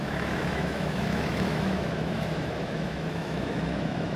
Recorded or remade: remade